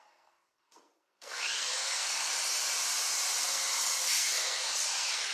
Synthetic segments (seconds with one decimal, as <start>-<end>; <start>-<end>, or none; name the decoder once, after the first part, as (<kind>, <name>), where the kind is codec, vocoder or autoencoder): 0.0-2.3 (codec, SNAC); 3.4-5.3